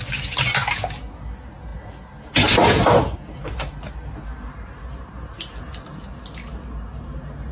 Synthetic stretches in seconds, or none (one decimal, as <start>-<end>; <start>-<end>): none